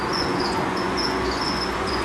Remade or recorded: remade